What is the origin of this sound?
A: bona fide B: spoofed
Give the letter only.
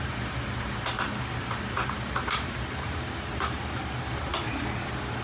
B